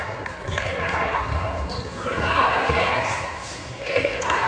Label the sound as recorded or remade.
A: remade